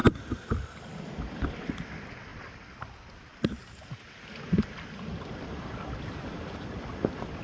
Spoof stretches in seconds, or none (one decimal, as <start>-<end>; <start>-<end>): none